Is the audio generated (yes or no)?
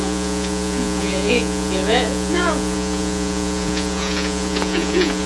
yes